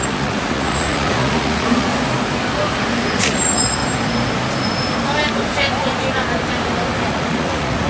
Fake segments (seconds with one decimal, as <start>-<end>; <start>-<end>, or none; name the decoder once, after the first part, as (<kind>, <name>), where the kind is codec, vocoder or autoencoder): 0.0-1.9 (vocoder, Vocos); 3.1-3.8; 7.1-7.9